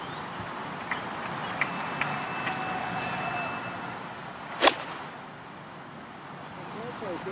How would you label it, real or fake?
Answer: real